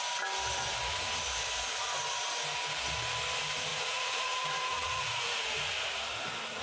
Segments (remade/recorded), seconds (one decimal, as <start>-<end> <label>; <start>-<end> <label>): 0.0-3.7 recorded; 3.7-6.0 remade; 6.0-6.6 recorded